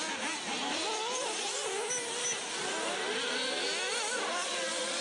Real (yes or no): yes